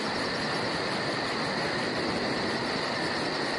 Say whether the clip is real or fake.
real